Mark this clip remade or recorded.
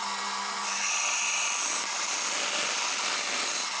recorded